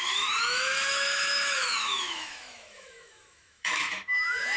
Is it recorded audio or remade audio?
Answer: remade